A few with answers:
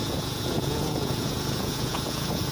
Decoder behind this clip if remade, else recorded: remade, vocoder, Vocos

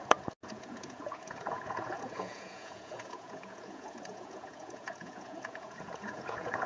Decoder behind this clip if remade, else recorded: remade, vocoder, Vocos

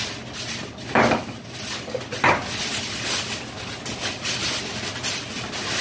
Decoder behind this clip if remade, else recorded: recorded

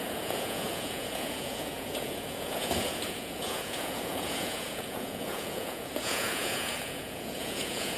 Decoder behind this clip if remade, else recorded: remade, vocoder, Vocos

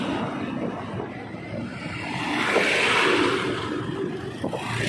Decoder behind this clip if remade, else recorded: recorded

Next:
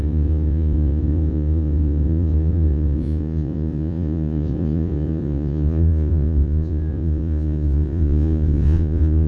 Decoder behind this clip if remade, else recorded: remade, vocoder, Vocos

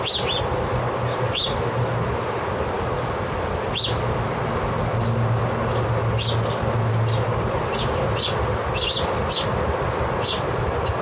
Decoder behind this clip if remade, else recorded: recorded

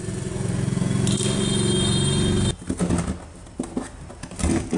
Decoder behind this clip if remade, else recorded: recorded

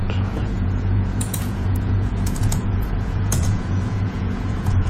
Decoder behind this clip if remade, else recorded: remade, vocoder, Vocos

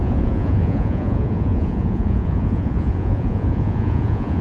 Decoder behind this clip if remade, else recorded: remade, vocoder, Vocos